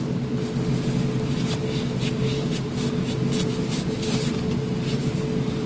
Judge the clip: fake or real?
real